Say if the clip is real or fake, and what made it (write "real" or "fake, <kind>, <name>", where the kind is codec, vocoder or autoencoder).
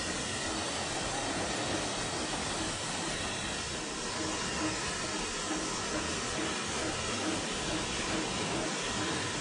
real